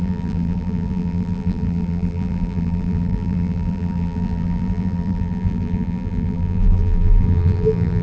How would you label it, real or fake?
fake